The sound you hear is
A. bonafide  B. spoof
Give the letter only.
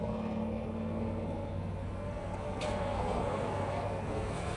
B